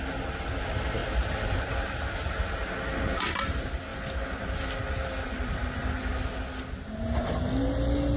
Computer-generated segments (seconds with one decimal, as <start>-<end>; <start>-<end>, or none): none